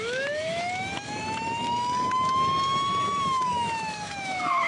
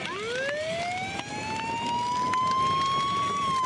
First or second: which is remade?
first